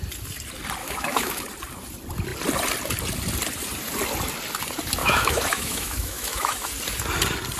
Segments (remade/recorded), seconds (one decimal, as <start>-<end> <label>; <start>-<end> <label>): 0.0-0.8 recorded; 0.8-1.4 remade; 1.4-5.0 recorded; 5.0-6.7 remade; 6.7-7.6 recorded